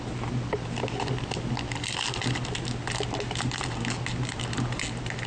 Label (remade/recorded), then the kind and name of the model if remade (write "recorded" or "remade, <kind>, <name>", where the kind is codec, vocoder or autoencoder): recorded